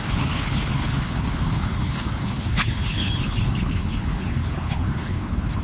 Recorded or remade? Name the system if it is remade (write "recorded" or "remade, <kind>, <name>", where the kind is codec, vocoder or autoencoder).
remade, codec, HILCodec